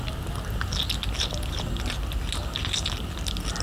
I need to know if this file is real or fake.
real